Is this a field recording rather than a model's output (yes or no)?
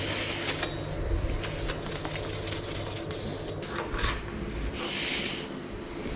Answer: yes